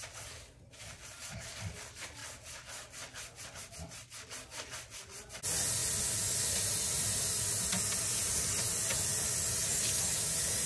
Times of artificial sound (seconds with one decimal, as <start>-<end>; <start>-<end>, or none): none